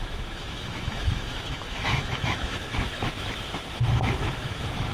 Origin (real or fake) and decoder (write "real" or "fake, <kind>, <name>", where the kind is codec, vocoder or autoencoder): fake, autoencoder, DAC-VAE